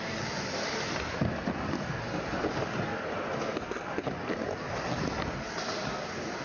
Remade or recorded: recorded